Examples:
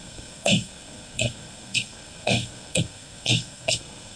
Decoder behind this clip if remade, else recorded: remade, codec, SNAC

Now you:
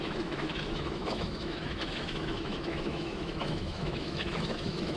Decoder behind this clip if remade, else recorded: remade, autoencoder, DAC-VAE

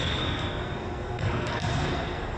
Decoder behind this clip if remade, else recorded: remade, codec, SNAC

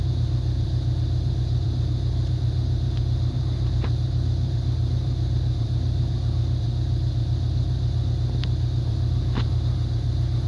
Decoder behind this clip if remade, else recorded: remade, vocoder, BigVGAN v2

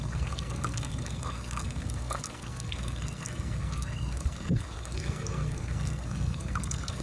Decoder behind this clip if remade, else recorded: remade, codec, SNAC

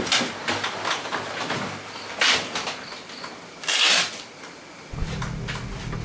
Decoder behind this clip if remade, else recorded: recorded